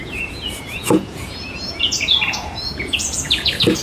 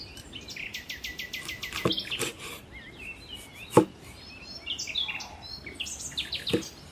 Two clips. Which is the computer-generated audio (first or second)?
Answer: first